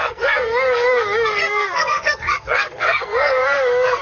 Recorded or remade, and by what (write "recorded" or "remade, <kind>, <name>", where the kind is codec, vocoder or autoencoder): remade, codec, SNAC